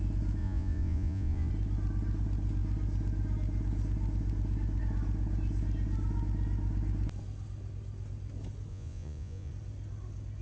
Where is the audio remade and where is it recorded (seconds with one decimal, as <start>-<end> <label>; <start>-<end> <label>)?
0.0-0.4 recorded; 0.4-1.5 remade; 1.5-8.7 recorded; 8.7-9.5 remade; 9.5-10.4 recorded